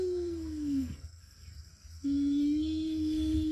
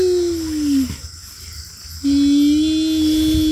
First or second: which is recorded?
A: second